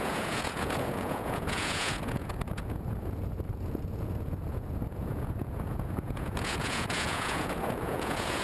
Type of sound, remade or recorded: remade